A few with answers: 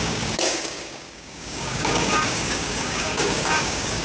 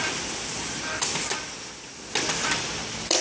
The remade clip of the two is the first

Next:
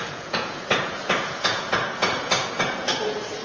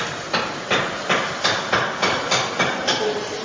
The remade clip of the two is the first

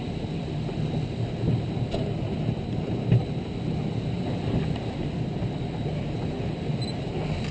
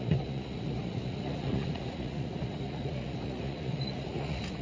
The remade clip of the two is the second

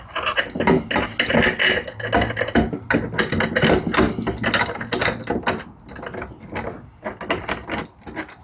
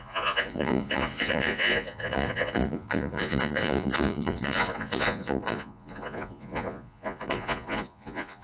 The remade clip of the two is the second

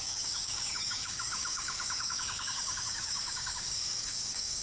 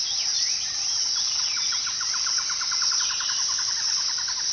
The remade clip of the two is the first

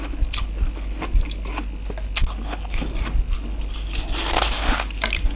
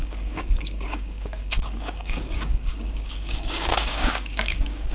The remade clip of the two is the second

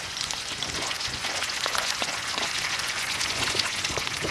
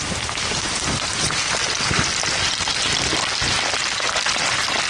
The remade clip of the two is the first